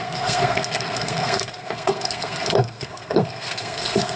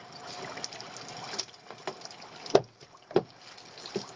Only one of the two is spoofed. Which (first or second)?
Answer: first